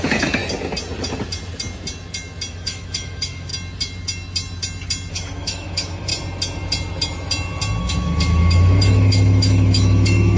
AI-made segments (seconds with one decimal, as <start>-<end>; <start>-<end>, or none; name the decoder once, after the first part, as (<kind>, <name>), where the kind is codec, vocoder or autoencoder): 0.0-0.4 (autoencoder, DAC-VAE); 2.5-3.5; 5.1-6.1; 7.8-10.4